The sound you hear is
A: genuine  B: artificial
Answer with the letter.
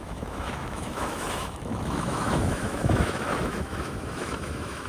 B